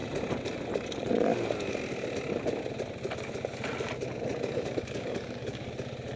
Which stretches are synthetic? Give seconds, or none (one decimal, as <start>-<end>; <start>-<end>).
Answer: 4.5-5.7